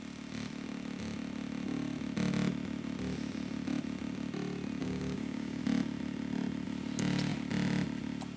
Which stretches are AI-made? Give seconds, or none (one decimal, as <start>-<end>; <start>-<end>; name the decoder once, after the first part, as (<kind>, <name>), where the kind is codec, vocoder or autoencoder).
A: 4.8-5.6 (codec, DAC)

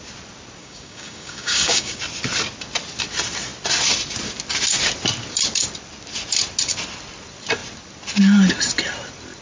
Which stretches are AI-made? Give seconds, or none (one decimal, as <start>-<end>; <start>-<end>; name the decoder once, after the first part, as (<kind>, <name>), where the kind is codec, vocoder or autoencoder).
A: 0.6-2.0 (codec, DAC)

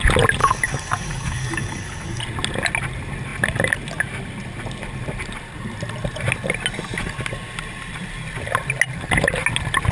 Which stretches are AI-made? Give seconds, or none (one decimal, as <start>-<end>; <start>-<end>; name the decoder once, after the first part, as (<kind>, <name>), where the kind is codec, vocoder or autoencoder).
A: 0.4-2.2 (codec, DAC)